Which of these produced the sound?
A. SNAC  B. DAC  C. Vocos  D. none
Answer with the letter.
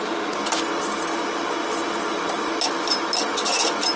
D